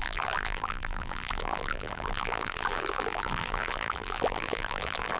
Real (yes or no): no